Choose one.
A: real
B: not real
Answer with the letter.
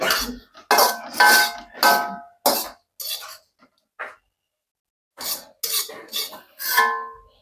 A